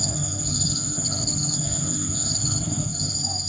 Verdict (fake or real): fake